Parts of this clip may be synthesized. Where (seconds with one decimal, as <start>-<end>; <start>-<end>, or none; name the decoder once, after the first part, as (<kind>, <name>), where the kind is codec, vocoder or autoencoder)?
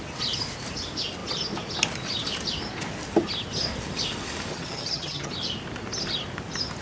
4.5-5.3 (vocoder, HiFi-GAN)